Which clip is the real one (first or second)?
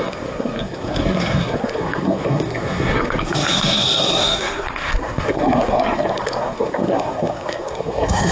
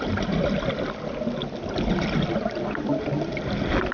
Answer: second